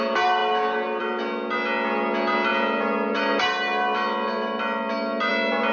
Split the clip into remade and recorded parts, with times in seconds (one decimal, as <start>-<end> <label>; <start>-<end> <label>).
0.0-5.7 recorded